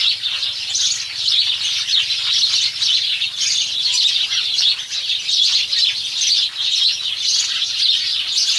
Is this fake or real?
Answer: real